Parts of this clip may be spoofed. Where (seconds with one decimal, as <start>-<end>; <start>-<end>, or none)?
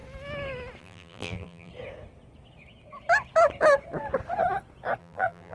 0.8-1.7; 5.0-5.5